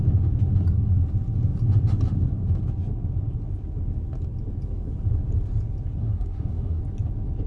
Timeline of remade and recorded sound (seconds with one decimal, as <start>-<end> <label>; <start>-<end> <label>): 0.0-6.0 recorded; 6.0-6.8 remade; 6.8-7.5 recorded